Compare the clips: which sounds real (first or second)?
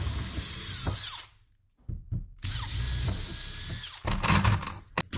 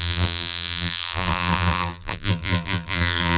first